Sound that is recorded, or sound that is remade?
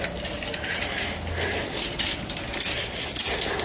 recorded